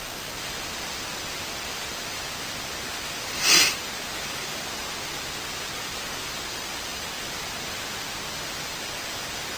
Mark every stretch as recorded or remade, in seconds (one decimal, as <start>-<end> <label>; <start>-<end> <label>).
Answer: 0.0-9.6 recorded